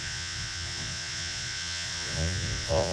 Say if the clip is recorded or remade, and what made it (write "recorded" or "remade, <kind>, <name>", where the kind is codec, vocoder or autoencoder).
remade, vocoder, Vocos